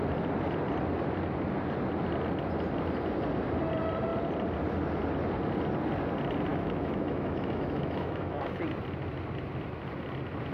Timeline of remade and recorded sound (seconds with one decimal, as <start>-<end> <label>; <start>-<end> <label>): 0.0-6.5 recorded; 6.5-8.6 remade; 8.6-10.5 recorded